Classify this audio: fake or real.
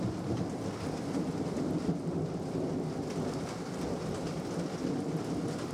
real